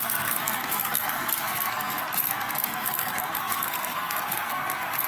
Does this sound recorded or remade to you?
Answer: remade